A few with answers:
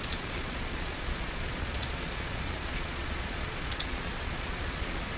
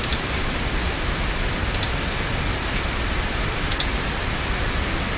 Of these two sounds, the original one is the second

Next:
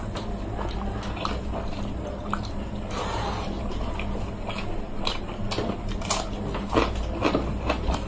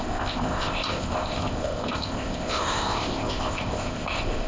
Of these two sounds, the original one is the first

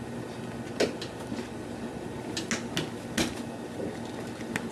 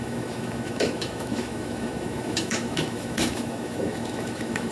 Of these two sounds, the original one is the first